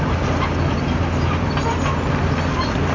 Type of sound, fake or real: real